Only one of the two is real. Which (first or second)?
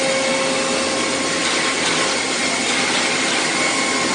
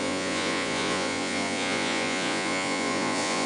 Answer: first